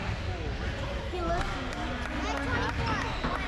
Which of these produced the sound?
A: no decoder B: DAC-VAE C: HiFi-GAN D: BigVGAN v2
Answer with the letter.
A